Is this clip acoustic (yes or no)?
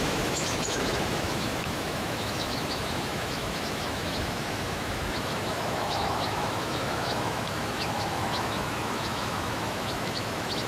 no